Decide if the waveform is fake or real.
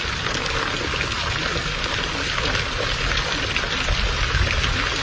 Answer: real